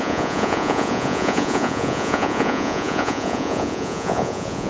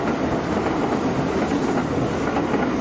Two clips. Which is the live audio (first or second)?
second